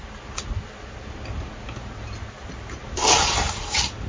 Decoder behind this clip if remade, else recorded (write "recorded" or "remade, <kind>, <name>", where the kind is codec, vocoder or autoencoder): recorded